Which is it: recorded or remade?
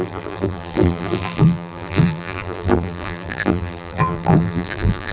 remade